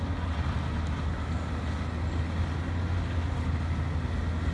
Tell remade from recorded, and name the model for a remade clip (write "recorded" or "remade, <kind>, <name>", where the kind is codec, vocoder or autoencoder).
recorded